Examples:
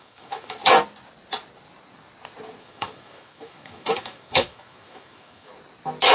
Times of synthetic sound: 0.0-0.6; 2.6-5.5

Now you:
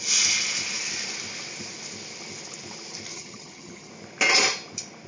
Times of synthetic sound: 3.1-3.9

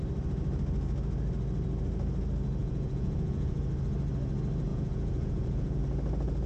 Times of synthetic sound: 2.6-3.6; 4.7-5.8

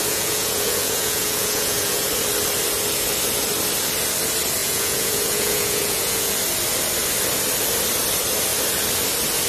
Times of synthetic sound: 0.0-2.1; 4.6-6.3